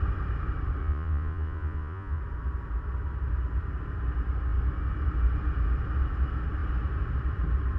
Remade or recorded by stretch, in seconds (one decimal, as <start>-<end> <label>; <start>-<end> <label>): 0.0-0.8 recorded; 0.8-2.2 remade; 2.2-7.8 recorded